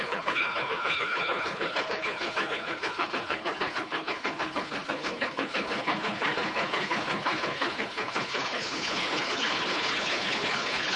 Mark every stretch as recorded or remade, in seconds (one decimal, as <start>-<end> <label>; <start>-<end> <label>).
0.0-11.0 remade